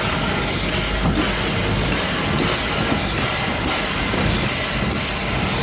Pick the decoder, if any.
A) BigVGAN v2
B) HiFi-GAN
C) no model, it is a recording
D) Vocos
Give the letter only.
C